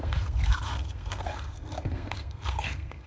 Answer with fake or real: fake